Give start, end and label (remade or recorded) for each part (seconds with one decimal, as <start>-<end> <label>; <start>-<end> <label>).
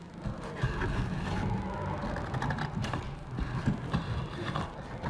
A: 0.0-5.1 recorded